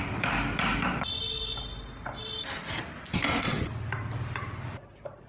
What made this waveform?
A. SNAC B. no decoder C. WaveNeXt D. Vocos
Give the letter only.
B